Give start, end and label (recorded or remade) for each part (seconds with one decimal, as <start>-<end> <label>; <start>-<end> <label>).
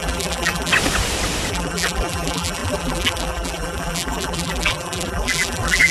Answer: 0.0-0.7 remade; 0.7-1.5 recorded; 1.5-5.9 remade